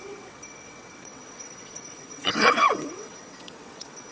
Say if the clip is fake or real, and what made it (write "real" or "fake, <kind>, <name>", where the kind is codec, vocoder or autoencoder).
fake, vocoder, WaveNeXt